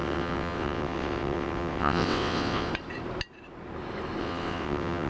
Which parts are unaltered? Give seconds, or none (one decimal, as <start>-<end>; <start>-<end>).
2.7-4.2